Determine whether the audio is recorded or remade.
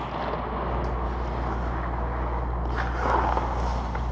recorded